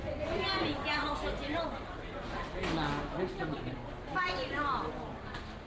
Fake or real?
real